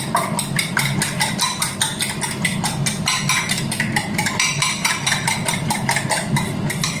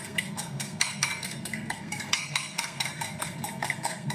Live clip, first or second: first